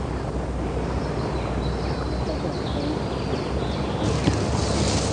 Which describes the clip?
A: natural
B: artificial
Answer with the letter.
A